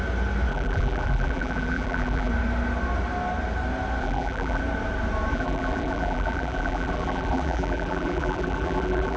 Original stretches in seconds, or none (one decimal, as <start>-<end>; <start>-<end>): 0.0-0.5; 2.3-4.0; 4.6-5.3